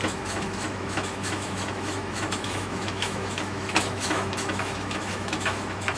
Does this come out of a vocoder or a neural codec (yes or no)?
yes